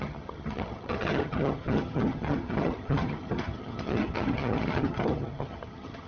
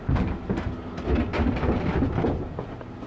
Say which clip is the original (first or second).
second